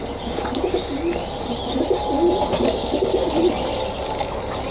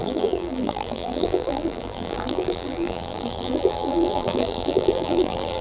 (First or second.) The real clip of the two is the first